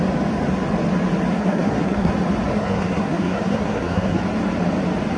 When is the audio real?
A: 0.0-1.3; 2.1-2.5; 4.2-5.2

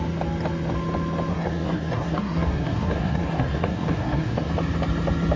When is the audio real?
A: 0.0-1.3; 4.5-5.4

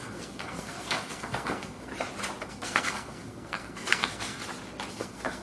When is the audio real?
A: 1.9-2.4; 4.4-4.9